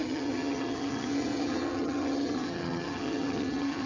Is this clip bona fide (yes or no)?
no